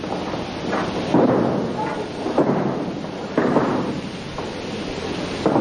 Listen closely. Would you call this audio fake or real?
real